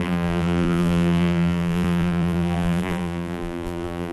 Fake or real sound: fake